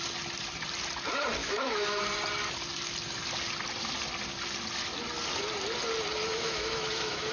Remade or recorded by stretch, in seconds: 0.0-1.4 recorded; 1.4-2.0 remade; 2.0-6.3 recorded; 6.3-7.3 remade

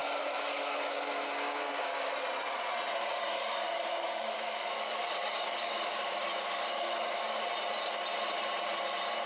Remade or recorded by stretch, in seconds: 0.0-2.1 remade; 2.1-3.0 recorded; 3.0-7.4 remade; 7.4-9.3 recorded

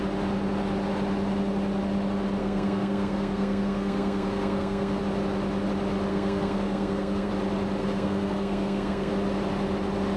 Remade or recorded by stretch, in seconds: 0.0-2.4 recorded; 2.4-5.0 remade; 5.0-6.1 recorded; 6.1-7.3 remade; 7.3-7.8 recorded; 7.8-9.1 remade; 9.1-10.2 recorded

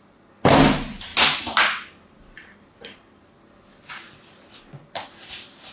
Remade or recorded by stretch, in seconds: 0.0-5.7 recorded

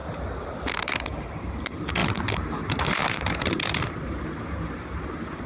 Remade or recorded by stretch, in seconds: 0.0-0.8 recorded; 0.8-5.5 remade

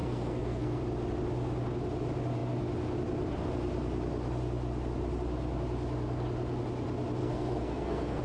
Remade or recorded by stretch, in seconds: 0.0-0.8 remade; 0.8-7.2 recorded; 7.2-8.2 remade

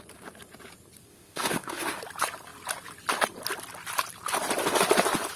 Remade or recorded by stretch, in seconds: 0.0-1.1 recorded; 1.1-2.0 remade; 2.0-5.4 recorded

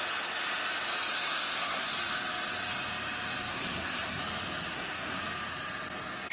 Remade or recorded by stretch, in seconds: 0.0-1.1 recorded; 1.1-1.9 remade; 1.9-3.5 recorded; 3.5-4.2 remade; 4.2-4.7 recorded; 4.7-5.2 remade; 5.2-6.3 recorded